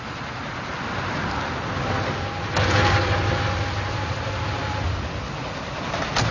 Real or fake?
real